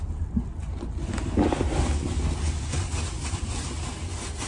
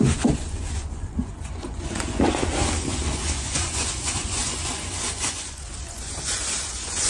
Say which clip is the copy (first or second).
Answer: second